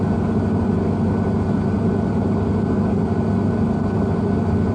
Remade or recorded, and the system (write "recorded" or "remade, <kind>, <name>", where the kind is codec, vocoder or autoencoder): recorded